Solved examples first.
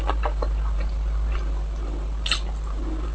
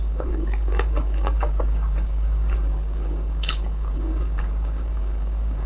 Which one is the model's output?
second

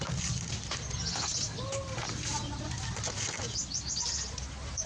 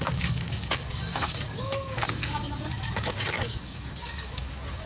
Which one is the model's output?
second